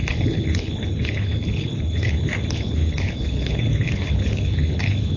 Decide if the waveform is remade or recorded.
remade